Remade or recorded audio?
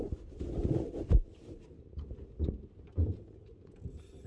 recorded